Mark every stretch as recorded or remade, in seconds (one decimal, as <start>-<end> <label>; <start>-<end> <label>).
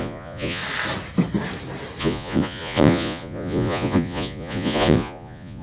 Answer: 0.0-0.6 remade; 0.6-2.0 recorded; 2.0-5.6 remade